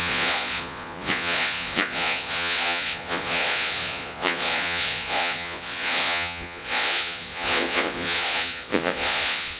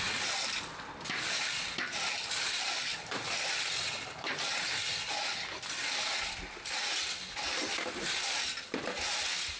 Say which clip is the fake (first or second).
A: first